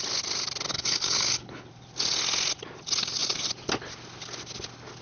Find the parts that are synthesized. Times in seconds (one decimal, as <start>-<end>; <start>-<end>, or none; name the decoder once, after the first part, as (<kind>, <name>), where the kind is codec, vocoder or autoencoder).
0.7-1.7 (codec, HILCodec)